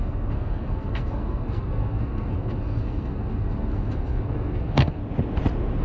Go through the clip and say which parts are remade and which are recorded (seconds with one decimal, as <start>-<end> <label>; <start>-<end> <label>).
0.0-5.0 remade; 5.0-5.8 recorded